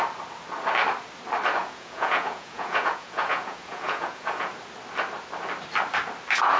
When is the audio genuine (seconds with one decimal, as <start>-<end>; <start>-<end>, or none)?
0.0-1.6; 4.5-6.6